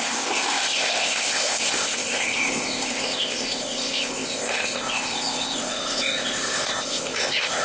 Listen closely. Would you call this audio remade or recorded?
remade